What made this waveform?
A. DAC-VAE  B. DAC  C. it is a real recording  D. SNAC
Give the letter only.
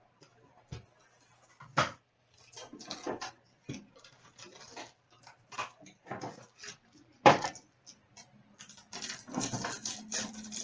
C